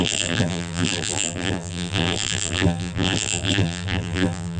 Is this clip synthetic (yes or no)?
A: yes